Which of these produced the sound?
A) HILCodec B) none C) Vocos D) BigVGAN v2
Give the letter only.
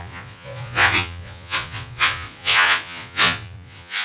C